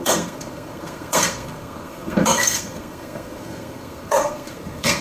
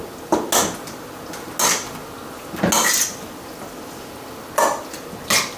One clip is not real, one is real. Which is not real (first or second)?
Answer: first